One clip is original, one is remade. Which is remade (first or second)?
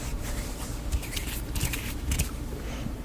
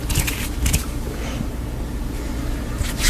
first